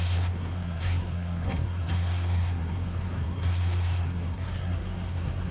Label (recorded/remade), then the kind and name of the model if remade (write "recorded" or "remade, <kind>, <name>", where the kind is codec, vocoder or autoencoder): remade, codec, SNAC